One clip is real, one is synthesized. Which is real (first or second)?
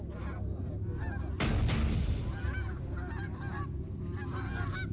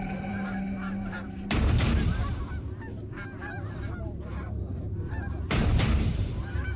first